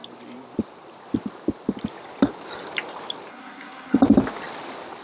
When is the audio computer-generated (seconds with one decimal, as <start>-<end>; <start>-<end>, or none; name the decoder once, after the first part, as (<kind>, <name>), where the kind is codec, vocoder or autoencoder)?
3.3-4.0 (codec, SNAC)